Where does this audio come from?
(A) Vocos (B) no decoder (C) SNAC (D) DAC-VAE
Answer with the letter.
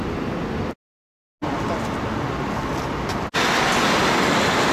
B